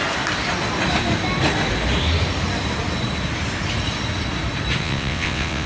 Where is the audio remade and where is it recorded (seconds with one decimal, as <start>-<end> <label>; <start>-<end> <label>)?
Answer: 0.0-4.8 recorded; 4.8-5.7 remade